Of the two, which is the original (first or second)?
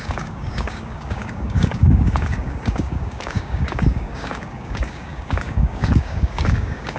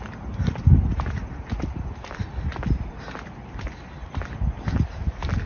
second